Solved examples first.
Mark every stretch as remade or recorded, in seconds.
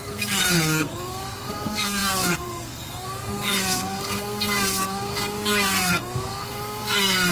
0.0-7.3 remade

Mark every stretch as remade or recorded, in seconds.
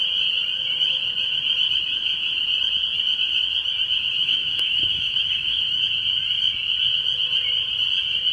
0.0-4.2 recorded; 4.2-5.6 remade; 5.6-8.3 recorded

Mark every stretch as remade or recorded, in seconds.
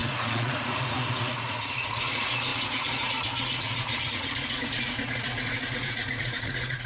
0.0-6.9 remade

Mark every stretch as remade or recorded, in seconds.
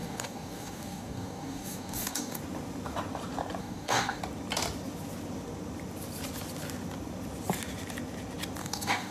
0.0-2.4 remade; 2.4-3.6 recorded; 3.6-4.2 remade; 4.2-8.6 recorded; 8.6-9.1 remade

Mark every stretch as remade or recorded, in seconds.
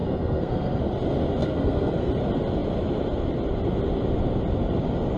0.0-0.8 remade; 0.8-1.4 recorded; 1.4-2.1 remade; 2.1-5.2 recorded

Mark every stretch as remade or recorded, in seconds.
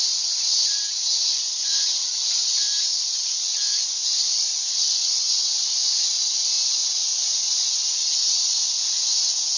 0.0-2.9 recorded; 2.9-3.4 remade; 3.4-4.3 recorded; 4.3-5.2 remade; 5.2-9.6 recorded